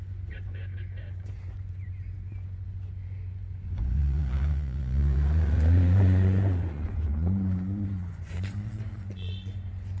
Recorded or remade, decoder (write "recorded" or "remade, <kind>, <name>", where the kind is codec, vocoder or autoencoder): remade, vocoder, Vocos